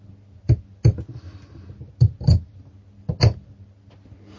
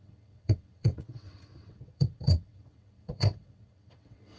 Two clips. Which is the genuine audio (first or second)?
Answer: first